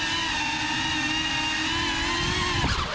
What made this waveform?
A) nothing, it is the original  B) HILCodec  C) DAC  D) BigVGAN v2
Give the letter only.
A